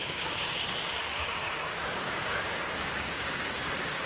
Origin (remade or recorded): remade